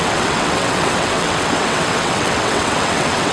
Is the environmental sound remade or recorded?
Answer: remade